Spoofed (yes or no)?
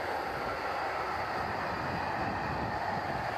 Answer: no